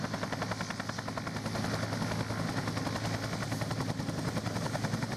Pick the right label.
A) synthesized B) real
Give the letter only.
B